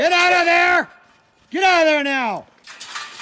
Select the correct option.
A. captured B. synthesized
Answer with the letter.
A